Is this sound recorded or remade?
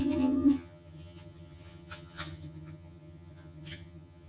remade